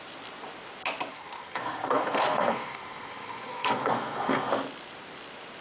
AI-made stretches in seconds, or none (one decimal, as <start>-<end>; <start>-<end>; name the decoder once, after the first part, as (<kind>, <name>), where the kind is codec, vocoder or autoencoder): 1.1-4.5 (codec, SNAC)